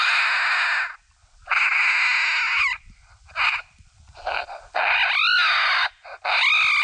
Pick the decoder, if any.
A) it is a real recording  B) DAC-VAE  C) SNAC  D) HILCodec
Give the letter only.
A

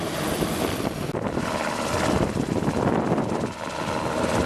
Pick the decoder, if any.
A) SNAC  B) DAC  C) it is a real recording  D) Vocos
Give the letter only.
C